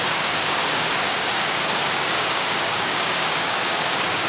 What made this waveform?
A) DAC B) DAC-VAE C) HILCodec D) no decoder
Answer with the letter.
A